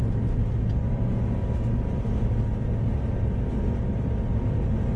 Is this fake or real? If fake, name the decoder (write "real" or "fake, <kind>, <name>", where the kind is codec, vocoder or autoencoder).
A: real